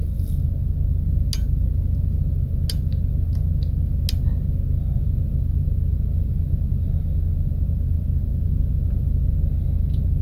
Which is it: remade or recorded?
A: recorded